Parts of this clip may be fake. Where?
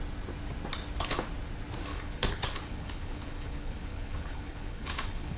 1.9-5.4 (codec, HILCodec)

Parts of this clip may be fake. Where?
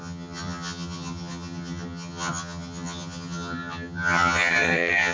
0.0-5.1 (vocoder, HiFi-GAN)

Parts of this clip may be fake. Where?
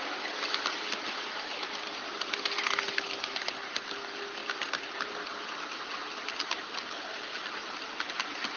none